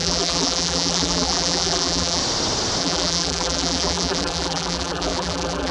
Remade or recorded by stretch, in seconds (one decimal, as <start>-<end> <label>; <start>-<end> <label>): 0.0-2.2 remade; 2.2-2.8 recorded; 2.8-5.7 remade